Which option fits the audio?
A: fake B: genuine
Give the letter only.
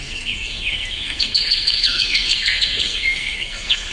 A